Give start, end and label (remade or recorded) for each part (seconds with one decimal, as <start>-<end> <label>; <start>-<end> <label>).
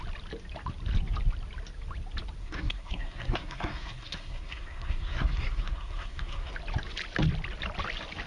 0.0-2.4 recorded; 2.4-6.5 remade; 6.5-8.3 recorded